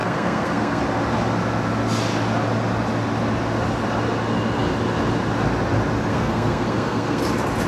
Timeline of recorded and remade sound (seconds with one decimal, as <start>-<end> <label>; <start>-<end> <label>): 0.0-0.8 remade; 0.8-6.1 recorded; 6.1-7.2 remade; 7.2-7.7 recorded